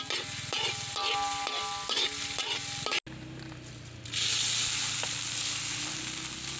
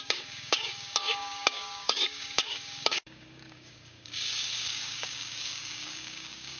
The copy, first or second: second